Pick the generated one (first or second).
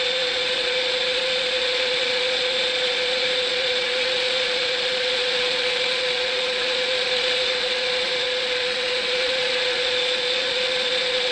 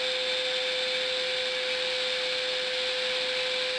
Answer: first